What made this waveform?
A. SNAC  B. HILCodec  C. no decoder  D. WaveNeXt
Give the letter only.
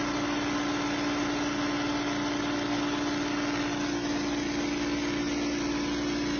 C